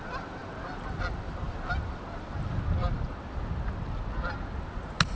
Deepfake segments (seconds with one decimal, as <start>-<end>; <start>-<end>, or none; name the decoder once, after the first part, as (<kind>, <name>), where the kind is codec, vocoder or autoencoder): none